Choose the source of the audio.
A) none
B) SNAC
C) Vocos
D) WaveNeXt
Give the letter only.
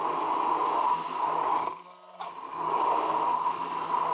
A